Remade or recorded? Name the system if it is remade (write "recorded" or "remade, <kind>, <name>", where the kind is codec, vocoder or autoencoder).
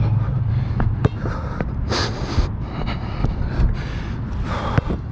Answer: recorded